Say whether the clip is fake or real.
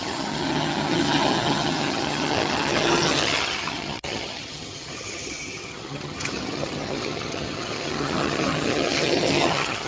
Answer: fake